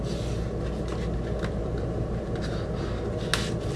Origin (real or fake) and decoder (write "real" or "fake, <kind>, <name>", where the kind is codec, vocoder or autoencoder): real